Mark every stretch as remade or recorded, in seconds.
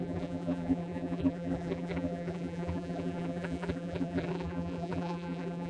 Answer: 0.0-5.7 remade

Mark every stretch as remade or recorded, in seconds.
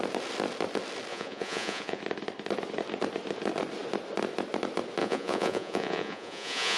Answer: 0.0-1.1 recorded; 1.1-2.0 remade; 2.0-5.0 recorded; 5.0-6.8 remade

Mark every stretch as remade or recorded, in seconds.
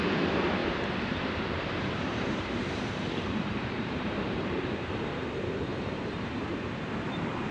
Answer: 0.0-0.6 recorded; 0.6-4.7 remade; 4.7-5.7 recorded; 5.7-6.5 remade; 6.5-7.5 recorded